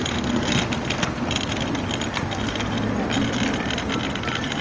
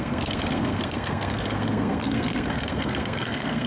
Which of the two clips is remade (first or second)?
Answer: second